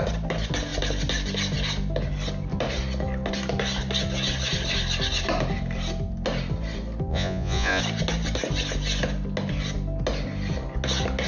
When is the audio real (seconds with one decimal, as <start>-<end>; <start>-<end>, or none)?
0.0-7.1; 7.8-11.3